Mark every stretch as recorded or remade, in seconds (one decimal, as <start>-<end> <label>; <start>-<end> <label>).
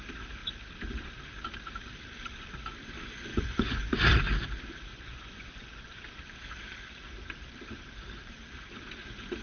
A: 0.0-3.3 recorded; 3.3-3.9 remade; 3.9-4.9 recorded; 4.9-6.0 remade; 6.0-9.4 recorded